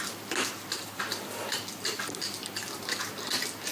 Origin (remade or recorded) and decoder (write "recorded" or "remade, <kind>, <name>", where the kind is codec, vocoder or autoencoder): recorded